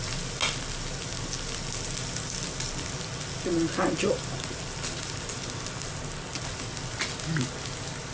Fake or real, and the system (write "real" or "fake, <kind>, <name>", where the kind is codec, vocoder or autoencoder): real